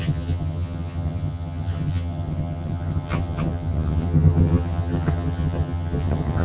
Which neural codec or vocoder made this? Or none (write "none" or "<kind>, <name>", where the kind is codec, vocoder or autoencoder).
vocoder, HiFi-GAN